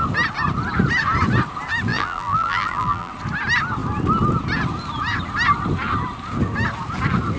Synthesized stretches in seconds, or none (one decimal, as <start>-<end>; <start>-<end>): 1.9-3.1